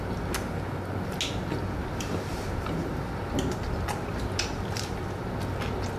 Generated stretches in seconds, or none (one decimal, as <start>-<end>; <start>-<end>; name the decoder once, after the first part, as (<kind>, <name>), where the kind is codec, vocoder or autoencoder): 1.8-2.3 (vocoder, BigVGAN v2); 4.1-4.9